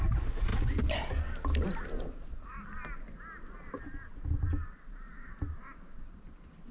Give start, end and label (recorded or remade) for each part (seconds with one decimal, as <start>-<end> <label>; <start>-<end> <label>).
0.0-6.7 recorded